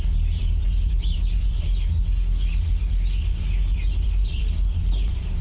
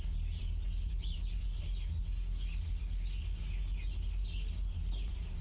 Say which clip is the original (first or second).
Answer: second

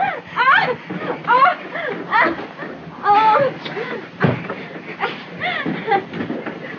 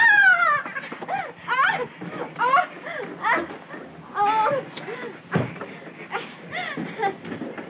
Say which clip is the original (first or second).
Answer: second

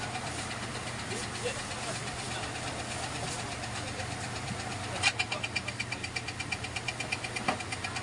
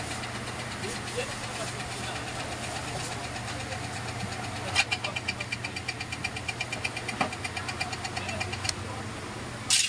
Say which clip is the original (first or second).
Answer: second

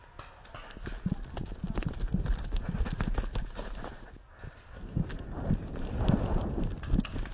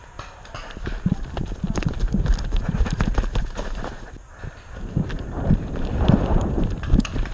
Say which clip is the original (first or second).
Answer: first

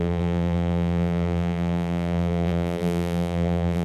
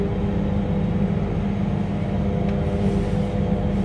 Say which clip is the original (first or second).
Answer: second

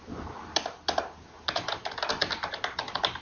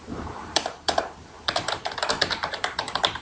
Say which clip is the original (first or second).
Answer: first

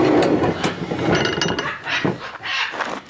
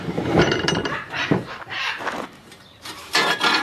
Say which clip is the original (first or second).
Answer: first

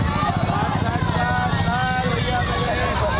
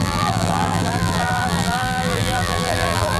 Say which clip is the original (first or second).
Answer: first